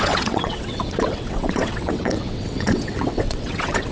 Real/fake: fake